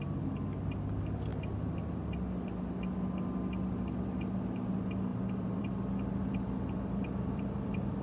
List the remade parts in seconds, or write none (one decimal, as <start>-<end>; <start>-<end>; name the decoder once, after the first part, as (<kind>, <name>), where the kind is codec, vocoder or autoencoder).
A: 5.1-8.0 (vocoder, BigVGAN v2)